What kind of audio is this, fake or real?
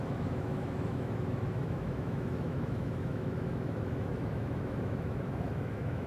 fake